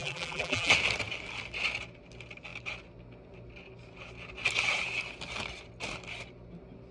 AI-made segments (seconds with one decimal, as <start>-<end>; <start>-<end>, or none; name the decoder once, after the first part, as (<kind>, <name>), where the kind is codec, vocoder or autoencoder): 0.0-0.7 (vocoder, BigVGAN v2)